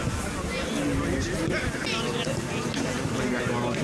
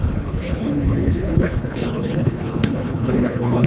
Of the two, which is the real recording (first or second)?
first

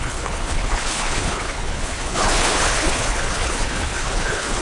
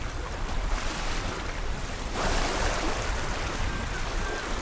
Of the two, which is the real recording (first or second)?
second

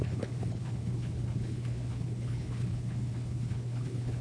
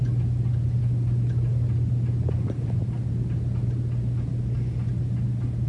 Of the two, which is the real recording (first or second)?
second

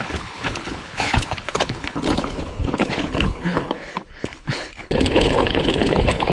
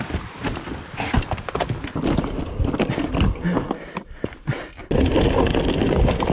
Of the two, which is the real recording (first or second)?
second